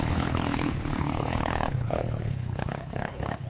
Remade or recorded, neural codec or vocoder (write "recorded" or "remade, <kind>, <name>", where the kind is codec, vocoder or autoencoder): remade, codec, HILCodec